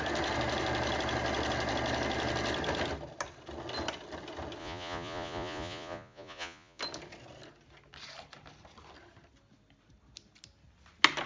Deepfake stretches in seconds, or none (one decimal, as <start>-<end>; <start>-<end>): 4.6-6.8